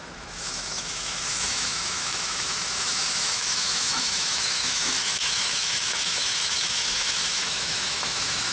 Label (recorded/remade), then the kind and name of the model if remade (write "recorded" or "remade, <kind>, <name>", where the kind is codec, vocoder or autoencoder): remade, autoencoder, DAC-VAE